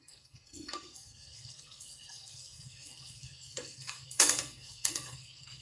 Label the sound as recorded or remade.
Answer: remade